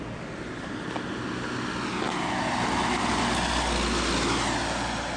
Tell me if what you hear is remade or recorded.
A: recorded